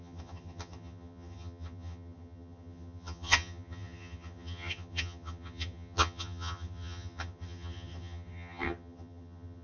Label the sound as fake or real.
fake